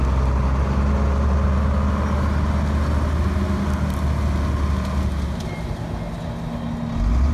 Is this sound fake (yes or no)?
no